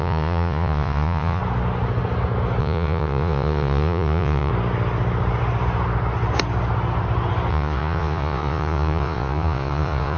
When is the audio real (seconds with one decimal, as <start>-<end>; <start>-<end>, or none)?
1.4-2.6; 4.5-7.5